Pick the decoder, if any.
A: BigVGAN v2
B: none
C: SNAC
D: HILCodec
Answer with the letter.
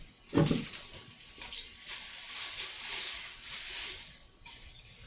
B